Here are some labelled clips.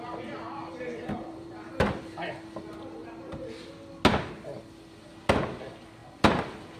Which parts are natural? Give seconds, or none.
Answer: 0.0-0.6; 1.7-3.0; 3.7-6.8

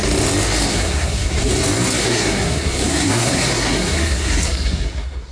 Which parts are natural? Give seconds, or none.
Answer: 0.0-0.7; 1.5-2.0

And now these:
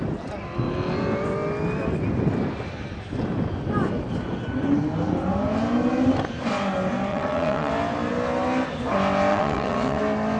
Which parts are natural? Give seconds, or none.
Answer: 0.0-7.1; 7.7-9.3; 10.0-10.4

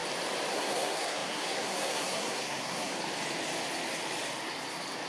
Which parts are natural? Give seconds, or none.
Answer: 0.0-0.5; 2.9-5.1

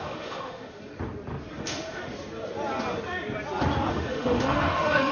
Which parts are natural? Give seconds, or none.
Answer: 0.8-1.6; 2.0-3.9

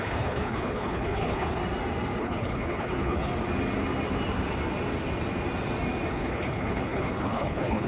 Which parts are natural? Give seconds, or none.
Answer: 1.6-2.2; 3.3-6.1

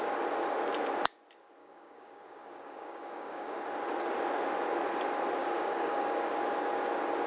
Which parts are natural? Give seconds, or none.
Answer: 0.0-1.6; 3.6-5.4; 6.3-7.3

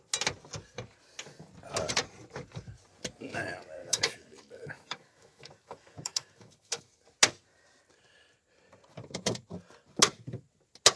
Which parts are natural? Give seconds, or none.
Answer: 0.0-3.8; 6.9-11.0